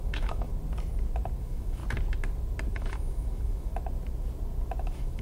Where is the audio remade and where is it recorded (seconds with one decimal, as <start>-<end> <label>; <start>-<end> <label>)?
0.0-0.5 remade; 0.5-1.4 recorded; 1.4-1.8 remade; 1.8-2.7 recorded; 2.7-3.7 remade; 3.7-4.8 recorded; 4.8-5.2 remade